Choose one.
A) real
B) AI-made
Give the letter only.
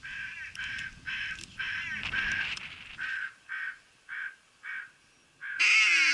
A